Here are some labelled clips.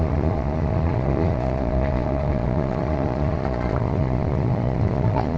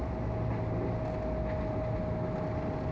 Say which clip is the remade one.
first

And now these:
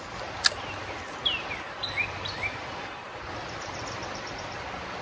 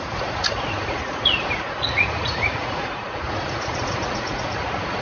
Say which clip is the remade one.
second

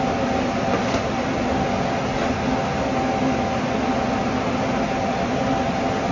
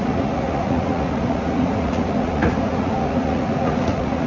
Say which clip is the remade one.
second